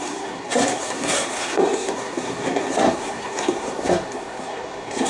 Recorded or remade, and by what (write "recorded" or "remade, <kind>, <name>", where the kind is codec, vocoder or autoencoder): remade, codec, SNAC